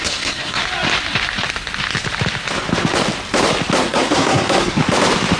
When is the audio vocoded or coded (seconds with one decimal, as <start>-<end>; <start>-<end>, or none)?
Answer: 0.0-0.6; 3.8-4.8